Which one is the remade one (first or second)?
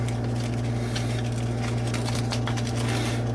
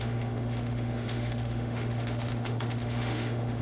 second